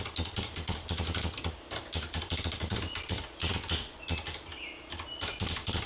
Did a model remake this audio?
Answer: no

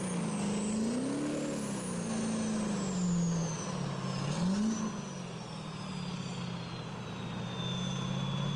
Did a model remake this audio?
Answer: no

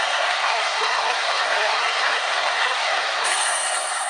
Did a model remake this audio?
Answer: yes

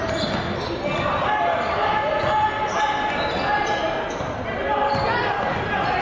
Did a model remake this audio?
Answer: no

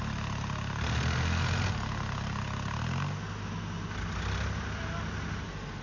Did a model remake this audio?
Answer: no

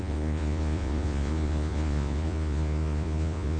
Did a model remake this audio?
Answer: yes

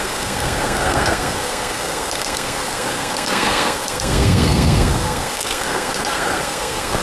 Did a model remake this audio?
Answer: yes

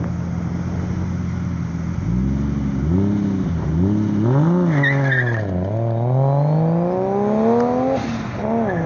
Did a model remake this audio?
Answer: no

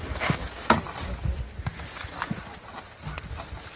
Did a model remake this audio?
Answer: no